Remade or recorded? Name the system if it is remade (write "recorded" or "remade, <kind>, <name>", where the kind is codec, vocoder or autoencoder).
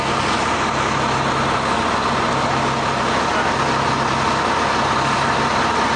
recorded